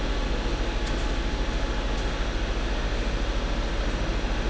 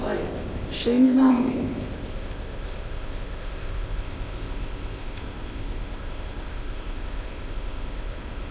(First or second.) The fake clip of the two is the second